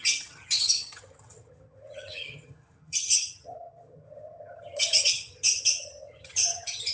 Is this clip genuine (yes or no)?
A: no